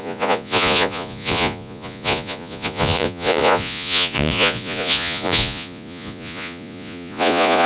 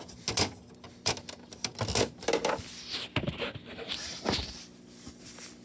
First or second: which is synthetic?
first